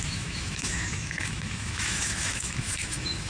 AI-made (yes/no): yes